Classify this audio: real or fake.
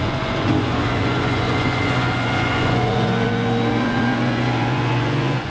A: fake